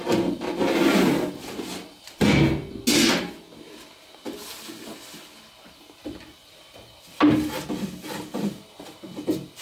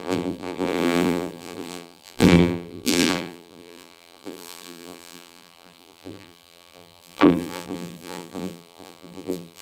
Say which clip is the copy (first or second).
second